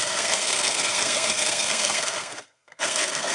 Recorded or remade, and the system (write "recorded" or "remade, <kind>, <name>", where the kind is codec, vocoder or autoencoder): remade, codec, SNAC